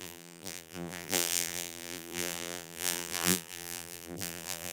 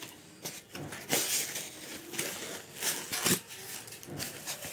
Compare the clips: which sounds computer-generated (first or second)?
first